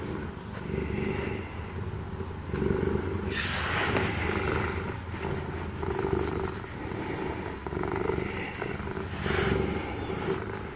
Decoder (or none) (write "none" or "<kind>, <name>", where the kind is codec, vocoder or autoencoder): none